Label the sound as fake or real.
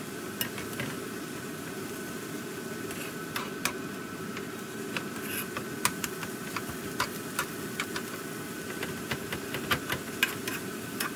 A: real